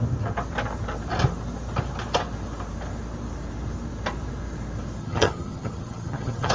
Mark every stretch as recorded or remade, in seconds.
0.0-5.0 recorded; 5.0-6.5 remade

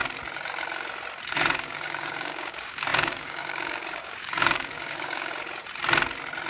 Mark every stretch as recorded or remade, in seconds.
0.0-1.3 recorded; 1.3-5.3 remade; 5.3-6.5 recorded

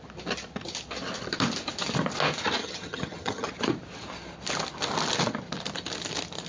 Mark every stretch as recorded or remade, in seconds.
0.0-2.6 recorded; 2.6-3.5 remade; 3.5-6.5 recorded

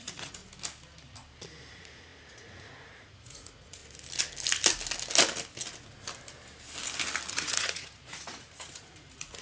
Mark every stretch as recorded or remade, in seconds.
0.0-0.4 remade; 0.4-1.7 recorded; 1.7-3.8 remade; 3.8-7.3 recorded; 7.3-9.4 remade

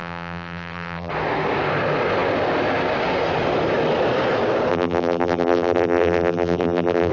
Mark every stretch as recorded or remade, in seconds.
0.0-1.1 remade; 1.1-4.7 recorded; 4.7-7.1 remade

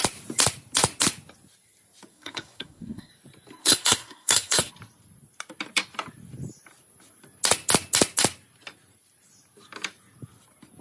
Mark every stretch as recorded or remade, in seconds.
0.0-2.1 recorded; 2.1-3.1 remade; 3.1-3.6 recorded; 3.6-4.7 remade; 4.7-10.8 recorded

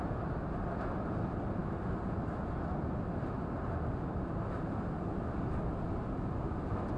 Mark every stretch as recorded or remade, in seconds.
0.0-7.0 recorded